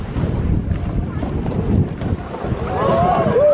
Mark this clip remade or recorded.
recorded